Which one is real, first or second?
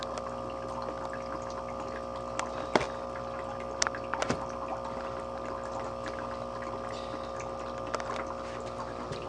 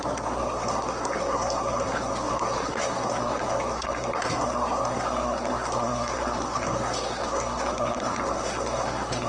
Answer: first